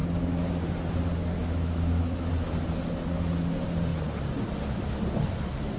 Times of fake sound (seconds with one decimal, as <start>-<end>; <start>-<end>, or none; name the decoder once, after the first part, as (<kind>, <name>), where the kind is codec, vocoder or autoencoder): 1.4-2.3 (autoencoder, DAC-VAE)